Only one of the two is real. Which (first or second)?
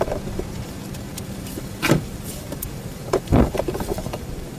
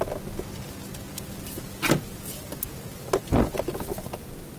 second